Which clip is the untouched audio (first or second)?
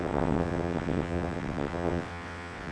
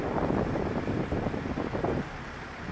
second